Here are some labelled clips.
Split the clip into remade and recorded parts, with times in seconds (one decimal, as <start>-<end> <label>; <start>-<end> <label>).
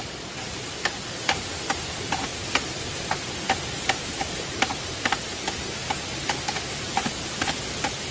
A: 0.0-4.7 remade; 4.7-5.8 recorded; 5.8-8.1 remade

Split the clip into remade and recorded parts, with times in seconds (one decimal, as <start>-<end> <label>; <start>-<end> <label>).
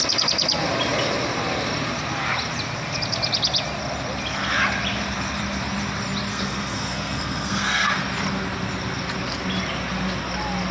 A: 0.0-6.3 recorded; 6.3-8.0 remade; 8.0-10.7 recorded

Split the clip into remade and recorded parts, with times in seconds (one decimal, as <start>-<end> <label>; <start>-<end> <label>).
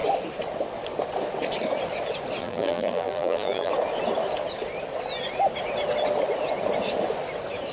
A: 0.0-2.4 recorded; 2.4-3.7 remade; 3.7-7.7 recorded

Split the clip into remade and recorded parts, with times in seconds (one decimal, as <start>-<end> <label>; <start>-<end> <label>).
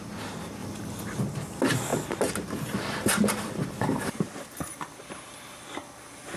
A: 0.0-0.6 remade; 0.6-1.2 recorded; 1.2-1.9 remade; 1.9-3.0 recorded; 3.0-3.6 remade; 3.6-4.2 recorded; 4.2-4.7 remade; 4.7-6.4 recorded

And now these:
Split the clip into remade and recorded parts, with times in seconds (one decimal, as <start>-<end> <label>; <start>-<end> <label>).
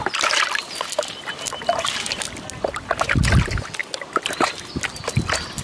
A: 0.0-3.8 recorded; 3.8-4.7 remade; 4.7-5.6 recorded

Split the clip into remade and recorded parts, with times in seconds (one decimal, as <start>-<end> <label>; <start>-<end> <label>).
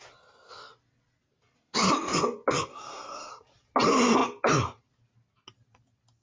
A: 0.0-2.7 recorded; 2.7-3.3 remade; 3.3-6.2 recorded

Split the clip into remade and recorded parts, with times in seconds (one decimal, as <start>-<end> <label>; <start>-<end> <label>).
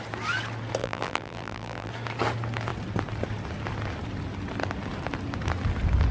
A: 0.0-0.8 recorded; 0.8-1.9 remade; 1.9-6.1 recorded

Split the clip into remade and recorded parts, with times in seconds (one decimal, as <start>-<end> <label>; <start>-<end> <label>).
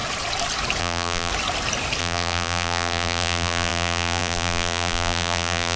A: 0.0-0.8 recorded; 0.8-1.3 remade; 1.3-2.0 recorded; 2.0-5.8 remade